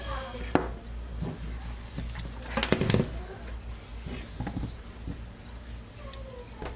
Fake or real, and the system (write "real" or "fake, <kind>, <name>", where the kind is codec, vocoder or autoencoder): real